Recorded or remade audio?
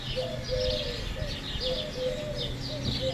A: recorded